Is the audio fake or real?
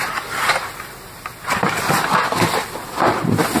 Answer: fake